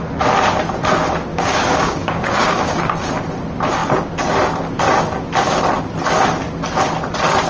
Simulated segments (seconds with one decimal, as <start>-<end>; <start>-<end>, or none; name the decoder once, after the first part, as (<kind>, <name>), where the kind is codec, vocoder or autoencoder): 1.3-2.9 (codec, DAC)